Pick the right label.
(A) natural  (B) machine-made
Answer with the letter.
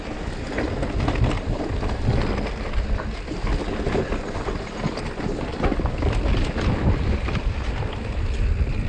A